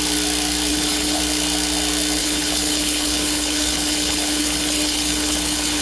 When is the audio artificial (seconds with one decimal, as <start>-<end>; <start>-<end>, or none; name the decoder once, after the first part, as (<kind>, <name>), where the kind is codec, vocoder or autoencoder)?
0.7-1.2 (codec, HILCodec); 2.2-5.8